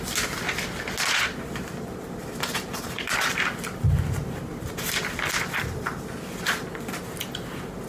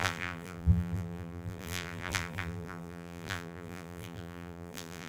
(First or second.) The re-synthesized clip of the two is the second